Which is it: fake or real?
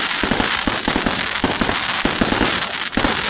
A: real